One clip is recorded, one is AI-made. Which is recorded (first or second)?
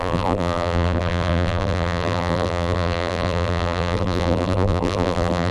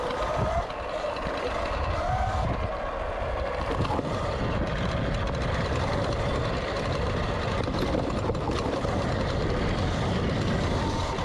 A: second